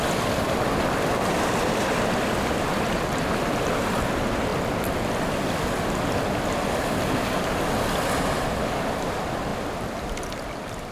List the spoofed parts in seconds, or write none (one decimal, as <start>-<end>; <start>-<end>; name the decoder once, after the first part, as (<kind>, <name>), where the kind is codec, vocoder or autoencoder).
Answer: none

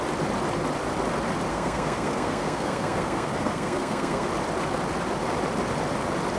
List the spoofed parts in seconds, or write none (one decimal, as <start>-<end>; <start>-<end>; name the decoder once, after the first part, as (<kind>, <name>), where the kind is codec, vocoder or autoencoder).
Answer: 1.5-4.3 (codec, SNAC)

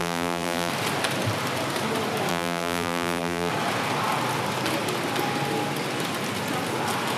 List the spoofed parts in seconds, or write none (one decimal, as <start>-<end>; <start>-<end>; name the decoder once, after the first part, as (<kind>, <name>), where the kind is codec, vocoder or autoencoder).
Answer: 0.0-0.7 (vocoder, BigVGAN v2); 2.3-3.5